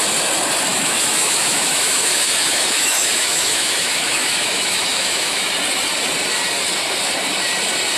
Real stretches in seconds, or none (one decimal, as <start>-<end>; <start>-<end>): 0.0-0.7; 5.5-8.0